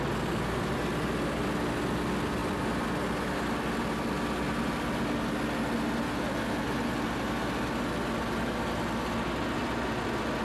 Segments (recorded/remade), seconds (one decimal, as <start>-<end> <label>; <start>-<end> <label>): 0.0-10.4 recorded